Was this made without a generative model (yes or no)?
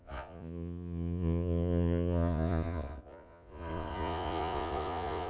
no